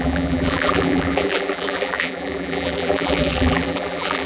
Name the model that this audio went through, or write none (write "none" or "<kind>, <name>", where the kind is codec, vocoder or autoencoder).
vocoder, BigVGAN v2